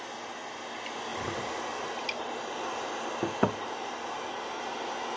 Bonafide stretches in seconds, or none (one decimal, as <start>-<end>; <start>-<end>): 0.0-1.1; 4.2-5.2